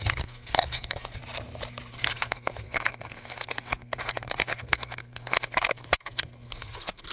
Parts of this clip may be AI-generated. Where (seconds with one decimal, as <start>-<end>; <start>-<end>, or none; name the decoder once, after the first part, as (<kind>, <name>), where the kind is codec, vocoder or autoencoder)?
0.0-1.2 (codec, SNAC); 1.9-7.1